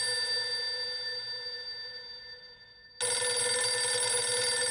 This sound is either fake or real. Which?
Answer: real